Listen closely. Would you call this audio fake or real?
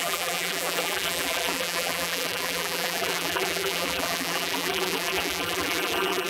fake